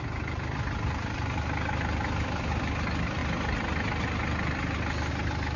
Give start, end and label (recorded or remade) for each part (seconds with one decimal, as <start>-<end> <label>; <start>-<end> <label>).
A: 0.0-5.6 recorded